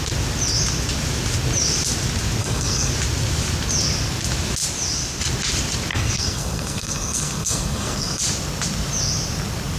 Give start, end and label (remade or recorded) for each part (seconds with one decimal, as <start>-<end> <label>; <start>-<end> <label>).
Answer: 0.0-2.4 recorded; 2.4-2.9 remade; 2.9-5.9 recorded; 5.9-8.2 remade; 8.2-9.8 recorded